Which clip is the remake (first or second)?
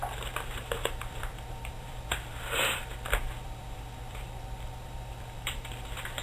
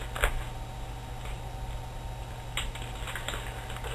first